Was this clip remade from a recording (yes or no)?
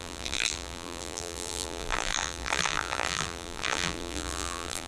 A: yes